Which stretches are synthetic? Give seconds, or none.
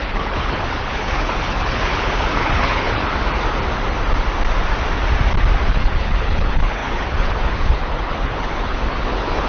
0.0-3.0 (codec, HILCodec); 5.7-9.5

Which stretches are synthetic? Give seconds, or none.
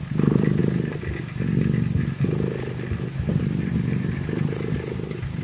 0.0-0.6 (vocoder, BigVGAN v2); 3.4-5.4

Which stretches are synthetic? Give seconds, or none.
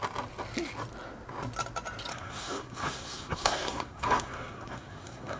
2.1-5.4 (codec, SNAC)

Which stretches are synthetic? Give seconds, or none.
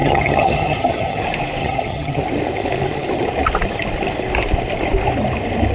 0.0-1.2 (vocoder, HiFi-GAN); 1.6-2.2